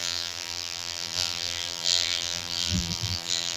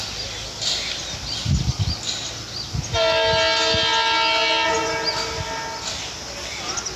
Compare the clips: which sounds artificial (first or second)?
first